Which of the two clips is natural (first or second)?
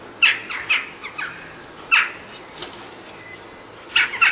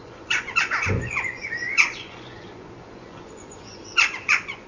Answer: first